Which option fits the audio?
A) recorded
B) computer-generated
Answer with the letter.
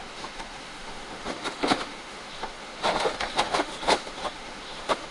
B